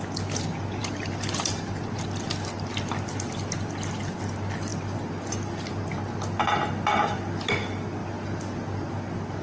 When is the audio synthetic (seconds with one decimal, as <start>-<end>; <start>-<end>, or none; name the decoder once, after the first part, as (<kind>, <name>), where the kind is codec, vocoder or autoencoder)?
0.8-1.8 (vocoder, BigVGAN v2); 8.0-8.9

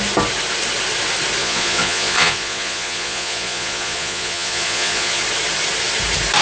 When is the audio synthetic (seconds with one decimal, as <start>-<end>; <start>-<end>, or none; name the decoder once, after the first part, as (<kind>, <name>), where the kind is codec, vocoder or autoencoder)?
1.4-5.2 (vocoder, Vocos)